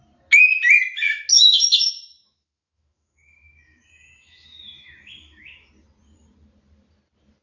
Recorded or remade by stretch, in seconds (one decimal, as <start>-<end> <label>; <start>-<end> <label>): 0.0-1.3 recorded; 1.3-5.7 remade; 5.7-7.4 recorded